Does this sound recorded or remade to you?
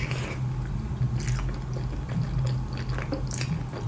recorded